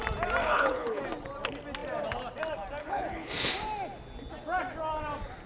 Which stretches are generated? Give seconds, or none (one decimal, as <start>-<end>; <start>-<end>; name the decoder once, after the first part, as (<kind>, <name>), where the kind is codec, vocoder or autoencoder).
0.4-1.0 (codec, HILCodec); 2.8-3.5